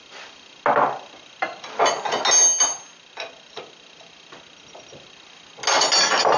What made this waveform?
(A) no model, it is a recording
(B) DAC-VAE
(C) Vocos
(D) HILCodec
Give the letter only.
A